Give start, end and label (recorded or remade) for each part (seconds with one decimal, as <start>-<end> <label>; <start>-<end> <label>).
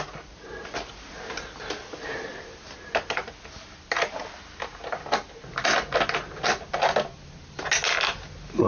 0.0-8.7 recorded